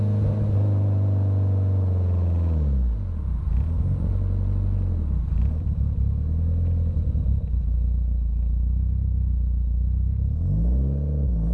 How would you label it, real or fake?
real